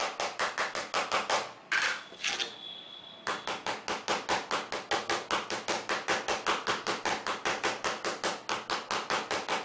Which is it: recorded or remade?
recorded